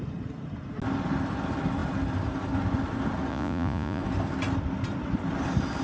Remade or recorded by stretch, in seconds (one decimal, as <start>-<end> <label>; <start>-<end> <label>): 0.0-3.3 recorded; 3.3-4.0 remade; 4.0-5.8 recorded